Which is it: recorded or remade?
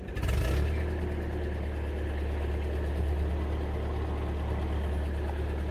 recorded